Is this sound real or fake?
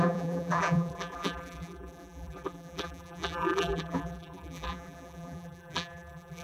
fake